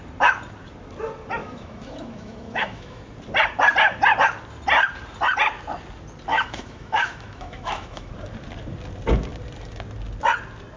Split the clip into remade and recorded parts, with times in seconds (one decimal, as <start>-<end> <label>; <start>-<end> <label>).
0.0-1.4 recorded; 1.4-3.0 remade; 3.0-6.3 recorded; 6.3-8.1 remade; 8.1-10.8 recorded